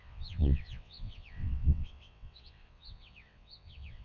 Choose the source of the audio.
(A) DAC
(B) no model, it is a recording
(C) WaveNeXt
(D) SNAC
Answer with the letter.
C